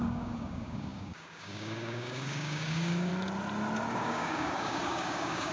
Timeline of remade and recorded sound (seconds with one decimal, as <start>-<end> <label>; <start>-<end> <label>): 0.0-3.1 remade; 3.1-3.9 recorded; 3.9-5.5 remade